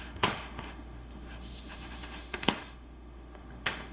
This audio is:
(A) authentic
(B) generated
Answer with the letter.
B